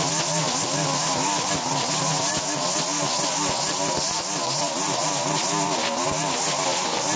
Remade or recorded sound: recorded